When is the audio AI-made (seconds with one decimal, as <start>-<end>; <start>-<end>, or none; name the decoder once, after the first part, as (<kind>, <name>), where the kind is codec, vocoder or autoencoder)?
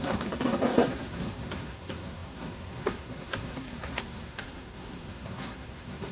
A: 0.0-6.1 (codec, SNAC)